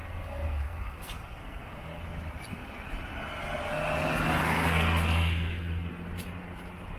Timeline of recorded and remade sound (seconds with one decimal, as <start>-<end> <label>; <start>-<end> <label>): 0.0-2.0 remade; 2.0-4.4 recorded; 4.4-5.9 remade; 5.9-7.0 recorded